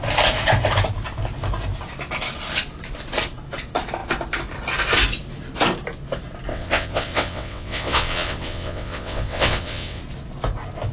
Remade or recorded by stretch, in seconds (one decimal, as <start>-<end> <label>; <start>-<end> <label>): 0.0-6.5 recorded; 6.5-10.0 remade; 10.0-10.9 recorded